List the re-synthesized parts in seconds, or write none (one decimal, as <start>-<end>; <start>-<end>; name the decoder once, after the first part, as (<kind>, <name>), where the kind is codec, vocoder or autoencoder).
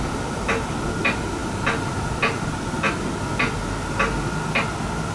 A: none